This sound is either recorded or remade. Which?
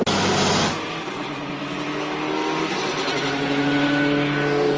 recorded